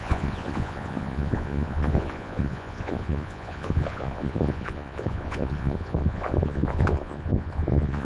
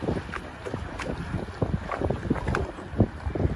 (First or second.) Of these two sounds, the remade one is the first